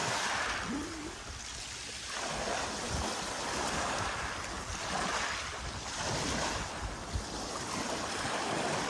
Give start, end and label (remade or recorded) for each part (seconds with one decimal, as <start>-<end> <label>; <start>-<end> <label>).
0.0-0.7 remade; 0.7-8.9 recorded